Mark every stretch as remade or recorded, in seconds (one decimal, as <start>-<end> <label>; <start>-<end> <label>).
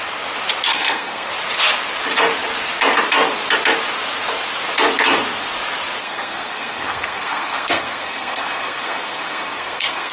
0.0-0.7 recorded; 0.7-1.3 remade; 1.3-6.0 recorded; 6.0-10.1 remade